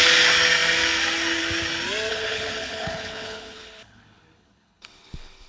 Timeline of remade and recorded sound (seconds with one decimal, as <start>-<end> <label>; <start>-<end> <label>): 0.0-2.1 recorded; 2.1-5.5 remade